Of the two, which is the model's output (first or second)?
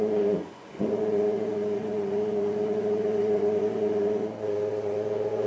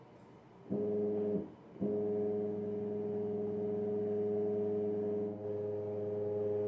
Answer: first